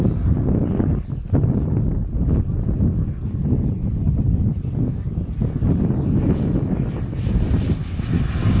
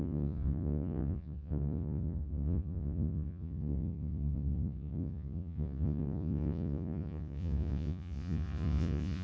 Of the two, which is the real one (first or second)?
first